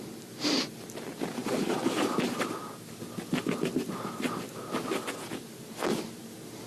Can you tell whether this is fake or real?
real